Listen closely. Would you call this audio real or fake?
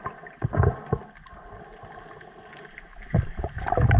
real